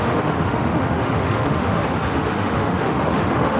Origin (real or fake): fake